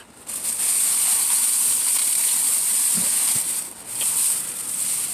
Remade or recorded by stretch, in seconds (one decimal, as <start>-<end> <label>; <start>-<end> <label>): 0.0-5.1 recorded